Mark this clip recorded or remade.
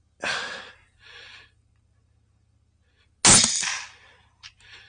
recorded